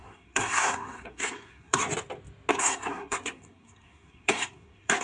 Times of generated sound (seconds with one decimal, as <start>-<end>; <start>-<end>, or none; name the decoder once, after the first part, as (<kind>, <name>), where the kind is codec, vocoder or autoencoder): 0.0-1.8 (codec, SNAC); 2.5-5.0